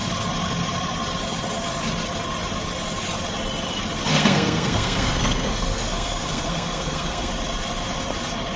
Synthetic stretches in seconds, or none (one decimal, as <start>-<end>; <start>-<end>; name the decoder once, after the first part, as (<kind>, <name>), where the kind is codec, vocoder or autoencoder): 4.1-7.3 (codec, SNAC)